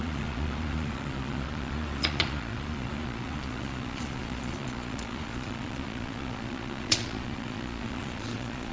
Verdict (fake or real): fake